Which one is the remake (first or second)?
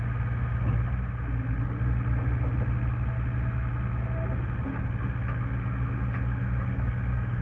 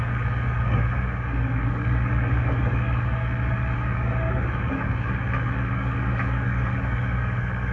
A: second